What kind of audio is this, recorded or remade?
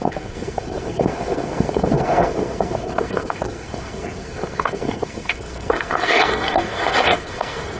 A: remade